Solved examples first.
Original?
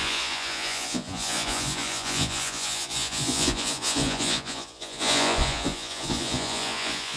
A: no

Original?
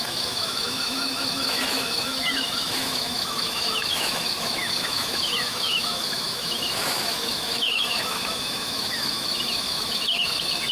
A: no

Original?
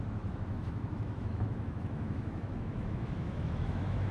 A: no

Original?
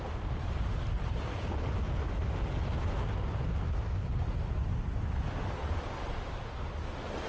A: yes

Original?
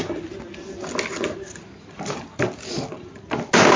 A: yes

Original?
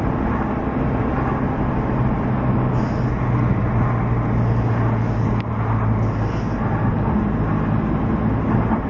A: yes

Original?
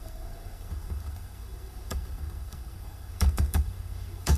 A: no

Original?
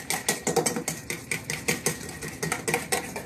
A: yes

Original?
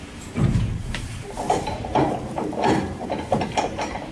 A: no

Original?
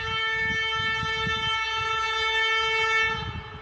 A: yes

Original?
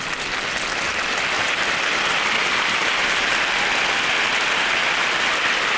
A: yes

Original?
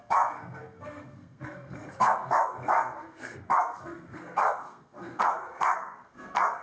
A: no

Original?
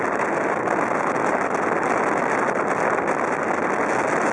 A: yes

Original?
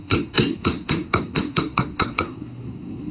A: no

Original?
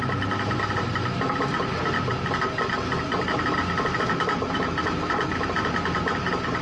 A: yes